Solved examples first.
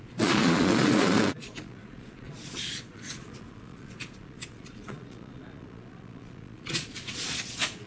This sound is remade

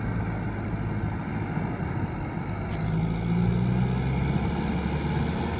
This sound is recorded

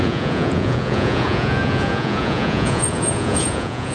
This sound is remade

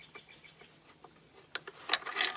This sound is recorded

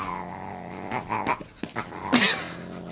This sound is recorded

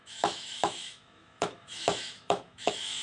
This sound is remade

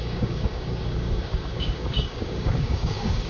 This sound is remade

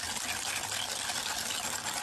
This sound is recorded